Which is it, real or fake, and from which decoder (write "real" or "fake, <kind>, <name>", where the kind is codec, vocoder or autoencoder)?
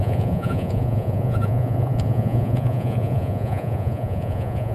fake, vocoder, Vocos